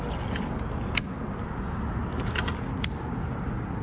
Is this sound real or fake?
real